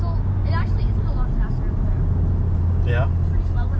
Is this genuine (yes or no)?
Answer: yes